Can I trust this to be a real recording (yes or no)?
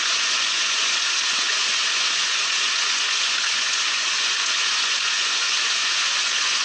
no